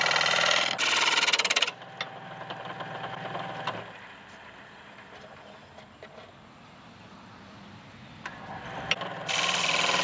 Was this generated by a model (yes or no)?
no